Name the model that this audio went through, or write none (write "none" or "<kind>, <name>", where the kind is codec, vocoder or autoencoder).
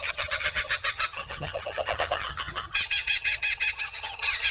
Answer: vocoder, HiFi-GAN